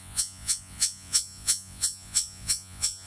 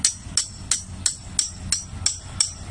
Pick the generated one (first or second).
first